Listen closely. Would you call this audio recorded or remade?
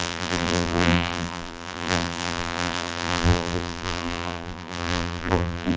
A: remade